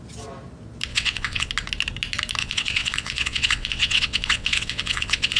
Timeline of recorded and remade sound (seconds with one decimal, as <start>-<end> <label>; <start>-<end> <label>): 0.0-0.9 recorded; 0.9-1.5 remade; 1.5-2.4 recorded; 2.4-5.4 remade